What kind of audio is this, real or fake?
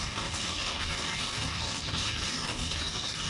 fake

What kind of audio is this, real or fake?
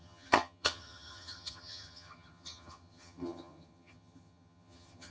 fake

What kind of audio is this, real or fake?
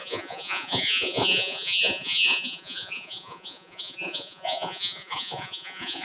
fake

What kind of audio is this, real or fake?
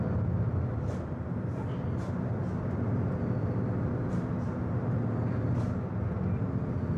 real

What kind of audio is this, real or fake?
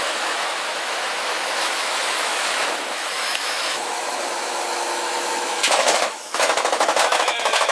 fake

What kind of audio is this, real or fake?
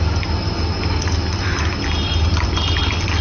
real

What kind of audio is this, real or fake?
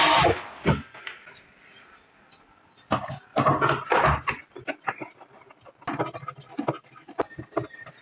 real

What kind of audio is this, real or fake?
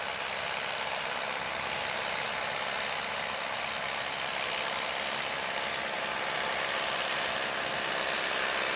real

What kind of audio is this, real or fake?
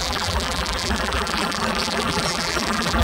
fake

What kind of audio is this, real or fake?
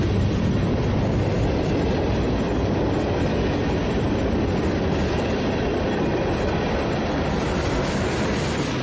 real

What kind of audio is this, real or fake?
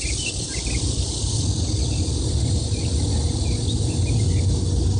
real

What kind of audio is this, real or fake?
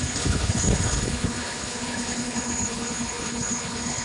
fake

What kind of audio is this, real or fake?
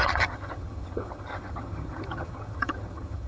fake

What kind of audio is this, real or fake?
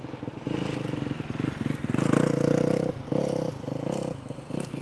real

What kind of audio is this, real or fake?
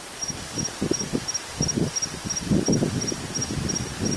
real